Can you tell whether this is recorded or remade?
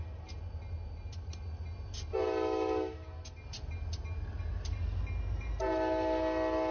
recorded